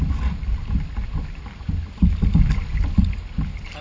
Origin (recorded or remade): recorded